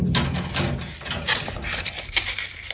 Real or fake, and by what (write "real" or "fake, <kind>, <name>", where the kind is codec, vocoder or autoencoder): real